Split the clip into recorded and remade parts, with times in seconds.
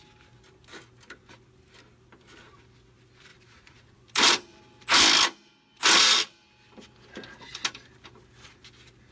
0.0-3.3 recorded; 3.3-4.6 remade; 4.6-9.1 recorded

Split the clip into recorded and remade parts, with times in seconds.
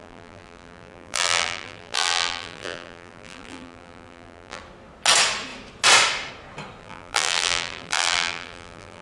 0.0-4.6 remade; 4.6-6.8 recorded; 6.8-9.0 remade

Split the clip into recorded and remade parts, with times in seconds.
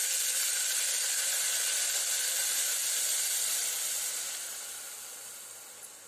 0.0-1.2 remade; 1.2-3.3 recorded; 3.3-4.1 remade; 4.1-6.1 recorded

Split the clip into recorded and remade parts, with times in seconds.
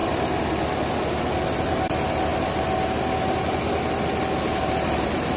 0.0-5.4 recorded